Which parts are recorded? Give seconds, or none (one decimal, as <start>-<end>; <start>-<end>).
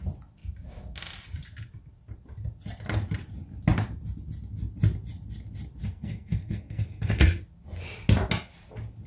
0.0-5.8; 7.4-9.1